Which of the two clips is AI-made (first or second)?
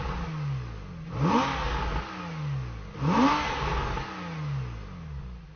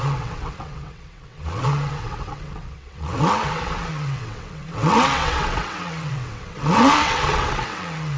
second